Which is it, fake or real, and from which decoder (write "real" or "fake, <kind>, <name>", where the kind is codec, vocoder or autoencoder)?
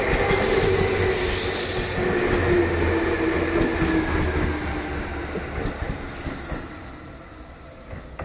real